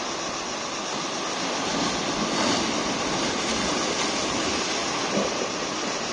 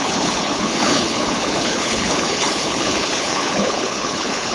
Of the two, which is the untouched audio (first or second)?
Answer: first